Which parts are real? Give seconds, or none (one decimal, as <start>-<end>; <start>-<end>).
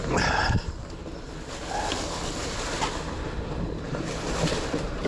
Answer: 1.0-4.1